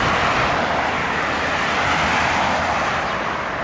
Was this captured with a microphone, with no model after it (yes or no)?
yes